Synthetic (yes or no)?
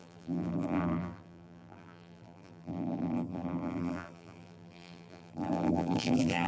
yes